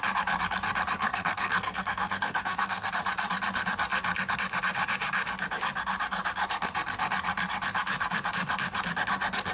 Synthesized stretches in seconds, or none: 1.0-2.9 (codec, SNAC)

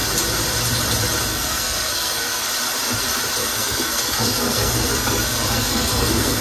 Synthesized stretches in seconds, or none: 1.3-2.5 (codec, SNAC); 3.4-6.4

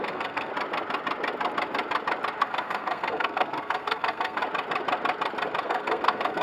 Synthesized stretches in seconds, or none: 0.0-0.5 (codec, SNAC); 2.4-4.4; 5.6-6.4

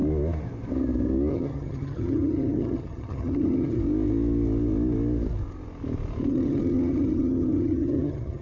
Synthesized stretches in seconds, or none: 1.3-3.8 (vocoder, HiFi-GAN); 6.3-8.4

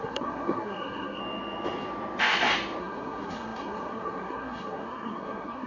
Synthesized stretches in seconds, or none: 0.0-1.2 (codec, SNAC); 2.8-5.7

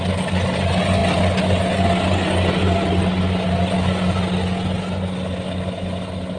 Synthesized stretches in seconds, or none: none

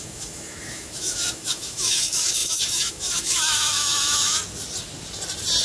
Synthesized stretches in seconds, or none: 0.0-4.4 (autoencoder, DAC-VAE)